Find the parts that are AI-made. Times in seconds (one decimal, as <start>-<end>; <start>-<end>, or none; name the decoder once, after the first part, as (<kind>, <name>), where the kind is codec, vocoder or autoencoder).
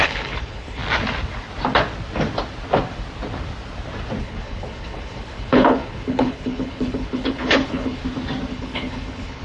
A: 0.0-0.8 (codec, HILCodec); 4.2-8.0; 8.5-9.4